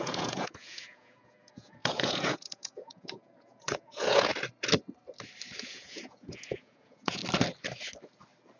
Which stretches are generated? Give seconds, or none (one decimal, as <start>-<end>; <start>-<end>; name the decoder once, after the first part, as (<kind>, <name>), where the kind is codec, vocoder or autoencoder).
0.0-4.3 (vocoder, Vocos); 5.6-7.2